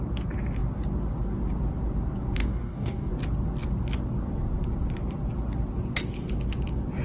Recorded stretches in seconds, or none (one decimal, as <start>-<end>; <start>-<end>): 0.0-2.4; 3.1-7.0